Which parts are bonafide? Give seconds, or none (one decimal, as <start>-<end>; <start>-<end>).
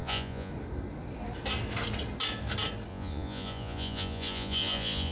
0.5-2.9